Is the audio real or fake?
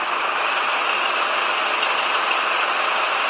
real